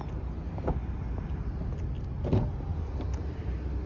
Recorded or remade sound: recorded